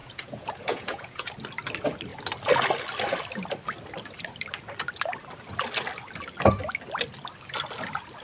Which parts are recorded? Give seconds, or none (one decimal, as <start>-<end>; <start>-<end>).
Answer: 1.3-8.2